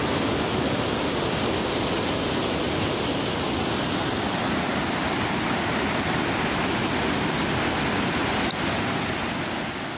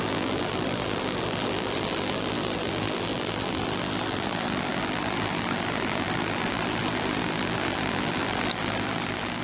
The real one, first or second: first